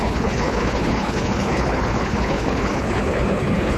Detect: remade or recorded remade